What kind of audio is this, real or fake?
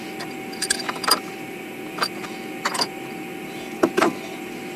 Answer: fake